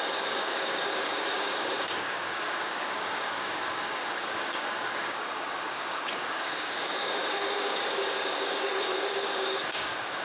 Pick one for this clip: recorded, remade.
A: remade